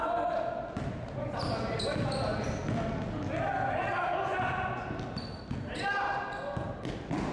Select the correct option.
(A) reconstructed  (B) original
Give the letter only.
B